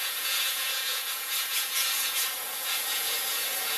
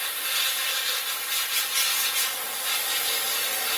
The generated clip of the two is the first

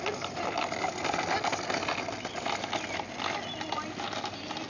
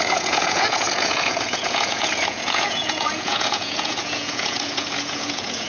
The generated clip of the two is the second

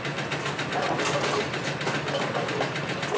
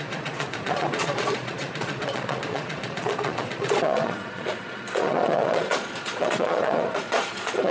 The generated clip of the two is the second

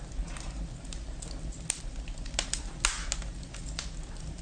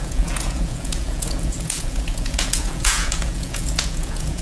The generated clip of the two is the second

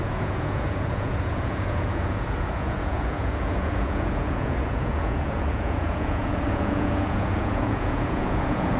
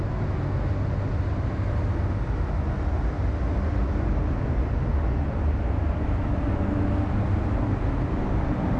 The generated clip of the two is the first